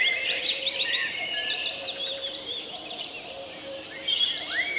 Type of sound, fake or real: fake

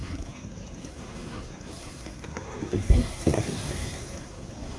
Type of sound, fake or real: fake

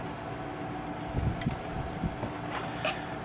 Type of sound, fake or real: real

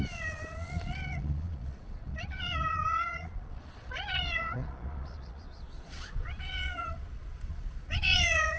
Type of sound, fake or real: fake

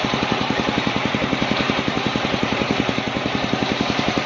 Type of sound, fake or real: fake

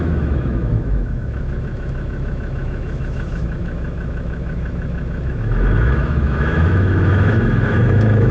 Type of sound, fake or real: fake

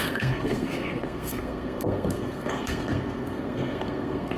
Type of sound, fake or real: fake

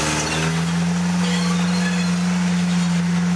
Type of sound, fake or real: real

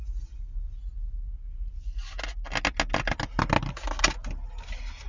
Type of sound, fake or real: real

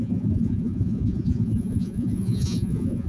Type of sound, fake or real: fake